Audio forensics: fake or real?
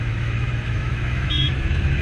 fake